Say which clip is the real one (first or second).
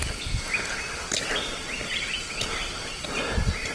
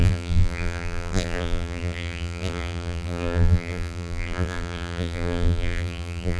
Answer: first